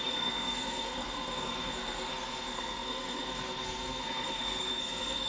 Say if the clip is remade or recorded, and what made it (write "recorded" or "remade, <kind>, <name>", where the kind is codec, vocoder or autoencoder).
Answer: remade, codec, SNAC